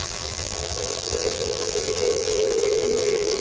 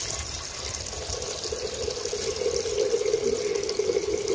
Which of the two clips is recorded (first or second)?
second